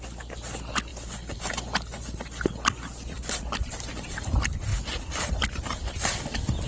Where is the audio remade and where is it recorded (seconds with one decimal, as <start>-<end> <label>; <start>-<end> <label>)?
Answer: 0.0-6.7 recorded